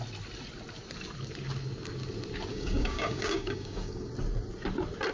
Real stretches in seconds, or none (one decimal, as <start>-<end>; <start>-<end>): 0.0-2.5; 4.1-5.1